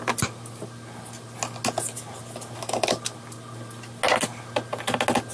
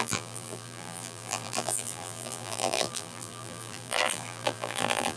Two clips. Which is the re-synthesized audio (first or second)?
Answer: second